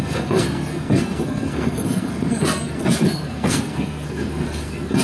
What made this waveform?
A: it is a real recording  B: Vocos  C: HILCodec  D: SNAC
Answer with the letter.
D